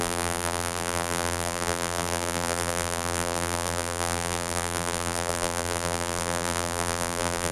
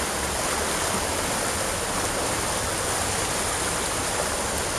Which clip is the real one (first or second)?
second